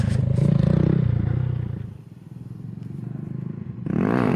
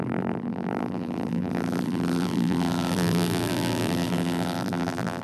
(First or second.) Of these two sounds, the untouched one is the first